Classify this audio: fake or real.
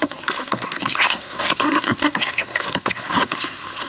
fake